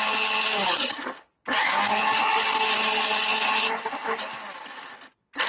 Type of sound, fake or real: real